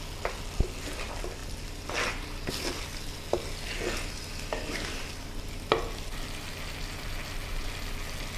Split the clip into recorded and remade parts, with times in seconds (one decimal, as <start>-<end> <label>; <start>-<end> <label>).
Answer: 0.0-8.4 recorded